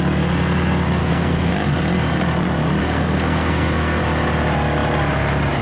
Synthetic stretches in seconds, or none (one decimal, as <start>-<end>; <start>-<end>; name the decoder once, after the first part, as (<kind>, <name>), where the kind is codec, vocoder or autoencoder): 1.0-1.5 (codec, SNAC); 2.8-4.0